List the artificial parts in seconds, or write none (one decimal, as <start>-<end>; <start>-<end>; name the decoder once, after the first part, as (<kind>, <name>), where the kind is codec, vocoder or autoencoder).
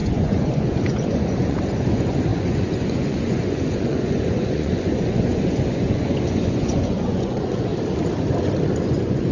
0.0-7.7 (vocoder, Vocos); 8.8-9.3